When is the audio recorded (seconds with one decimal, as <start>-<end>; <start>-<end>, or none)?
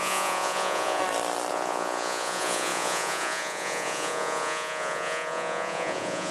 1.0-1.5